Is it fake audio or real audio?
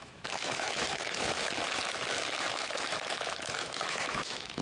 fake